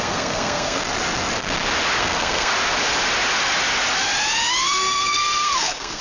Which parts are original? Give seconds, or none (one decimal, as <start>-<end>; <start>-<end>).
0.8-2.0; 2.5-4.6